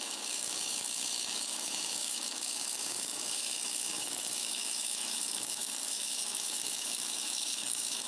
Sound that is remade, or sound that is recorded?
remade